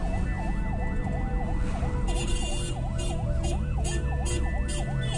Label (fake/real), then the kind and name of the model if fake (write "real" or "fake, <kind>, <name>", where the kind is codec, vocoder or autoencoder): real